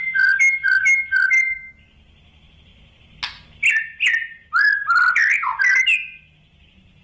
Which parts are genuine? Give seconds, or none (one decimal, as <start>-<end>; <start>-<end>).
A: 0.0-7.0

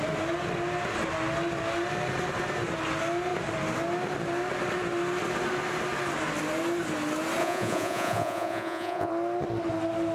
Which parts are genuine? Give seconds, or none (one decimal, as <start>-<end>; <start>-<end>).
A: 0.0-7.4; 9.1-10.1